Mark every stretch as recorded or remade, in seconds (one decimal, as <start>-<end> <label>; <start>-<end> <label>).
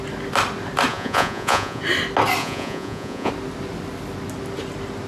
0.0-0.9 recorded; 0.9-1.8 remade; 1.8-2.4 recorded; 2.4-3.3 remade; 3.3-5.1 recorded